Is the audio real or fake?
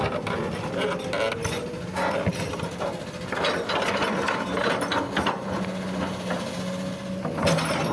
real